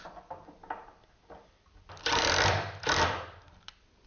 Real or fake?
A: real